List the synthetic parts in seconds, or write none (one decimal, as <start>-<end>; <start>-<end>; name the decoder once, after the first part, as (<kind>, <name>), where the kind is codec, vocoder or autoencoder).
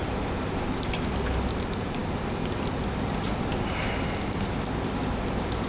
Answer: none